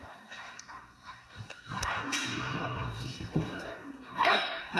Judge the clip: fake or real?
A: fake